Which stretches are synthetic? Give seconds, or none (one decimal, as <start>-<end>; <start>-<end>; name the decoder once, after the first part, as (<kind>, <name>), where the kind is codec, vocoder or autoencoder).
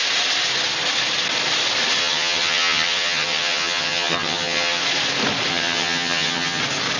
2.0-4.8 (vocoder, HiFi-GAN); 5.5-6.6